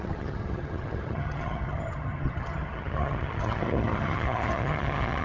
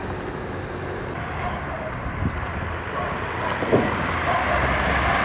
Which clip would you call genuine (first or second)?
second